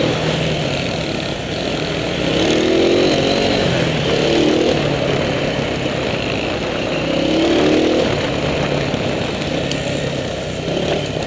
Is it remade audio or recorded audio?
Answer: recorded